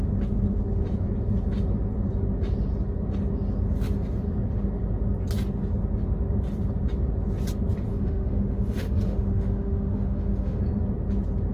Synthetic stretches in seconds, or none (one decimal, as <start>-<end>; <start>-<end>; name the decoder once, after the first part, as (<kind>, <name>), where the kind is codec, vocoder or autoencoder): 7.9-10.6 (autoencoder, DAC-VAE)